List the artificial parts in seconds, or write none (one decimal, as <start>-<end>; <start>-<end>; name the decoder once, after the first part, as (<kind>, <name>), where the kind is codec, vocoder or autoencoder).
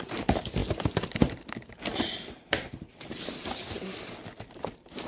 none